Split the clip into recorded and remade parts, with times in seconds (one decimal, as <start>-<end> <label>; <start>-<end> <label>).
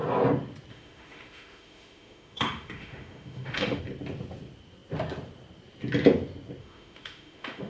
0.0-0.7 recorded; 0.7-3.8 remade; 3.8-6.6 recorded; 6.6-7.7 remade